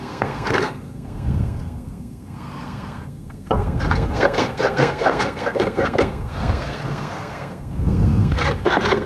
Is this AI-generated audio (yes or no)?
yes